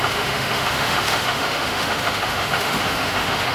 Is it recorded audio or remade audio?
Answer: remade